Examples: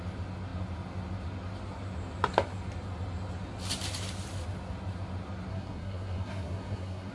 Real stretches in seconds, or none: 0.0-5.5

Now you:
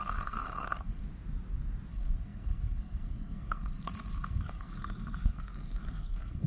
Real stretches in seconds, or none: 1.0-1.9

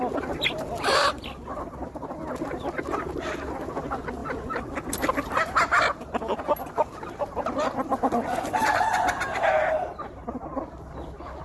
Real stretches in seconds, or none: 0.0-11.4